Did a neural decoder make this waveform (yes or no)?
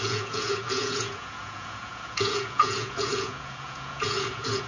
yes